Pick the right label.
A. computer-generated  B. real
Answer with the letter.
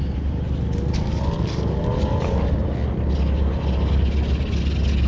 B